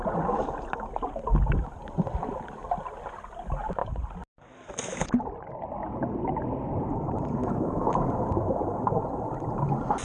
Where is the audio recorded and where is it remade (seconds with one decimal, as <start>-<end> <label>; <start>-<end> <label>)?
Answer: 0.0-7.4 recorded; 7.4-7.9 remade; 7.9-10.0 recorded